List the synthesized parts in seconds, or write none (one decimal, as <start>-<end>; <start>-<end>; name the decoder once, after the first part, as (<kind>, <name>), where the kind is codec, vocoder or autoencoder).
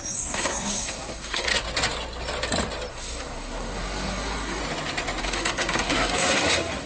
0.0-1.5 (codec, SNAC); 2.9-4.6; 5.2-6.9